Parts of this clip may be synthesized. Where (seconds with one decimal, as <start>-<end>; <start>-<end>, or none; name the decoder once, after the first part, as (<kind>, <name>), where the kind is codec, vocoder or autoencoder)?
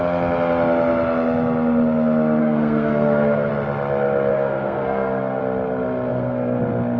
2.4-3.5 (codec, SNAC); 4.3-5.4; 6.1-6.6